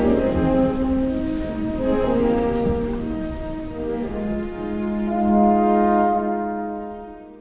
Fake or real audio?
real